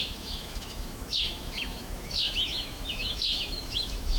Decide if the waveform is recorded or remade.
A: remade